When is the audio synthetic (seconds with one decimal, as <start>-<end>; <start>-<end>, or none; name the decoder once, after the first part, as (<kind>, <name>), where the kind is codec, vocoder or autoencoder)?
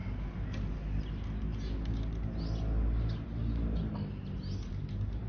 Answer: none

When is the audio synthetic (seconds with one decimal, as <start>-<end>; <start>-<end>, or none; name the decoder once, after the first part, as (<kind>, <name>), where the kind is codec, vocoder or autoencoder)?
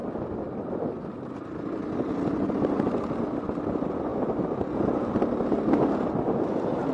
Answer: none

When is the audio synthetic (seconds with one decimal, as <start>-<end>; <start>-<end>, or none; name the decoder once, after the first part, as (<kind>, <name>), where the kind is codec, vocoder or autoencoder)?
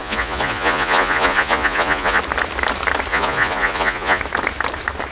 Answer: 0.0-2.2 (vocoder, Vocos); 3.1-4.2